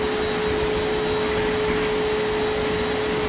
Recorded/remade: recorded